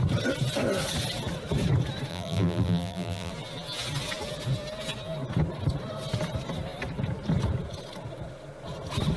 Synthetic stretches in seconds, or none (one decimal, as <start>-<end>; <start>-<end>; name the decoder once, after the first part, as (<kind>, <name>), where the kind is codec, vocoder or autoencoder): 2.1-3.3 (vocoder, BigVGAN v2)